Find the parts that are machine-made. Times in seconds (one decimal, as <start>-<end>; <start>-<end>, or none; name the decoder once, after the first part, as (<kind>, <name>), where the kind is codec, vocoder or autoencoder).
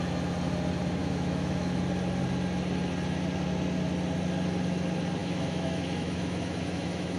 1.0-1.8 (autoencoder, DAC-VAE); 5.2-7.2